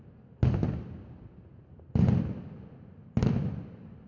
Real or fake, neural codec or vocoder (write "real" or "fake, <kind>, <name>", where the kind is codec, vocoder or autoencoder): real